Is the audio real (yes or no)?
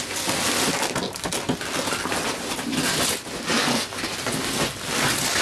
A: yes